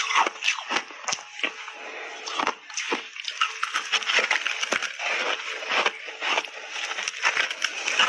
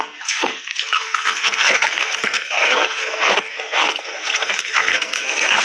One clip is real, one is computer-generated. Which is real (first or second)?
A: first